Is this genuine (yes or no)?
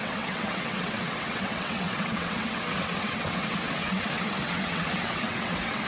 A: no